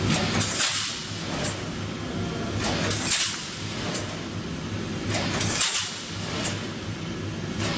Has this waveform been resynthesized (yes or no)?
no